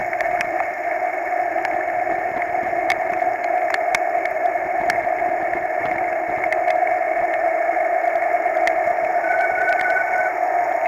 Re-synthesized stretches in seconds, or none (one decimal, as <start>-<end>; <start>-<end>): 9.1-10.3